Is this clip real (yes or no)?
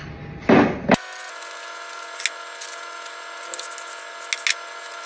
yes